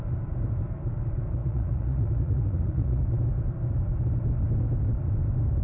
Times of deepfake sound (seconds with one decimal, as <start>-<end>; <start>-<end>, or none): 1.4-3.0